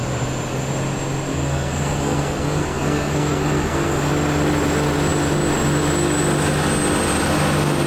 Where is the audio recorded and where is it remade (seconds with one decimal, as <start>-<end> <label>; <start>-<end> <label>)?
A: 0.0-1.3 recorded; 1.3-4.1 remade; 4.1-7.9 recorded